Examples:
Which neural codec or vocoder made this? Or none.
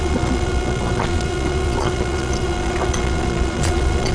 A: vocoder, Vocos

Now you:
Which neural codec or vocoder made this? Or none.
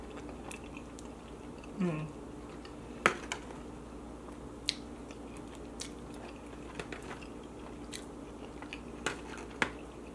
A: none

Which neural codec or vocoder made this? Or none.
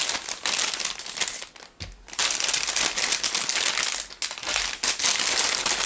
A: none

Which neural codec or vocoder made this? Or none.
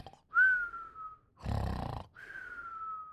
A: none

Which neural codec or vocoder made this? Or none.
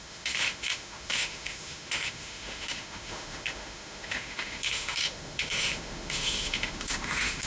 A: autoencoder, DAC-VAE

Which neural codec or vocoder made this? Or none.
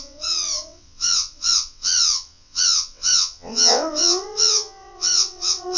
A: vocoder, WaveNeXt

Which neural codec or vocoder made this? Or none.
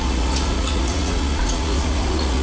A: vocoder, Vocos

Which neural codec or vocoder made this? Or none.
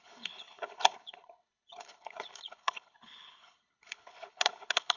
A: codec, HILCodec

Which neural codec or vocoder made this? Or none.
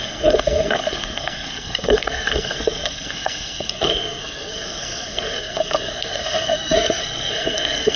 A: codec, SNAC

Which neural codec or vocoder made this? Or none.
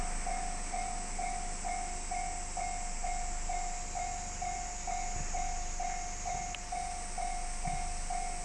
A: none